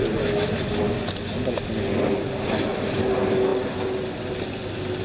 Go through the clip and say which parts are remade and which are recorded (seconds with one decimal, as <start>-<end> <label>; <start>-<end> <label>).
0.0-5.0 recorded